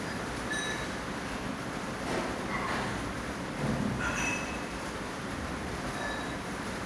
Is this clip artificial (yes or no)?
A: yes